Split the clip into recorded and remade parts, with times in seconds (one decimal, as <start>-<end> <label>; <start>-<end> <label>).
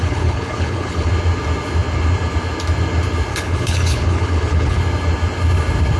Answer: 0.0-1.1 remade; 1.1-3.3 recorded; 3.3-4.8 remade; 4.8-6.0 recorded